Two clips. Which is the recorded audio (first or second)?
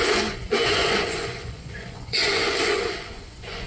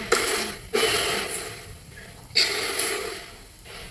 second